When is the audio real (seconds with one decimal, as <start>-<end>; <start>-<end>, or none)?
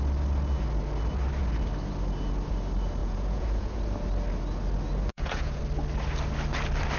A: 0.0-3.0; 3.8-5.1; 5.6-7.0